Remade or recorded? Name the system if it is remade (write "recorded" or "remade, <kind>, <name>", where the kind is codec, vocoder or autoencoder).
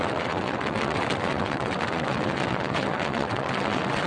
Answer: remade, vocoder, WaveNeXt